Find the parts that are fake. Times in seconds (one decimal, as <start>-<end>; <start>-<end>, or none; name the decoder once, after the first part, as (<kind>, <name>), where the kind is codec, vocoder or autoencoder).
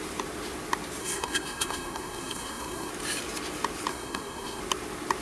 1.0-2.9 (codec, SNAC); 3.9-4.6